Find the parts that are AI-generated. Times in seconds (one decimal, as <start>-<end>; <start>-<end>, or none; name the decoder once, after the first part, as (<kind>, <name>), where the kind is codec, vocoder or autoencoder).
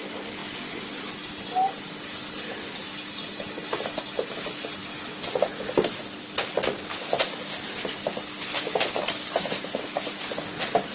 none